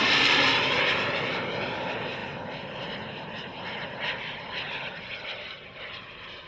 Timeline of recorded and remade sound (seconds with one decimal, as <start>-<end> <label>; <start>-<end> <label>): 0.0-0.8 remade; 0.8-2.2 recorded; 2.2-5.8 remade; 5.8-6.5 recorded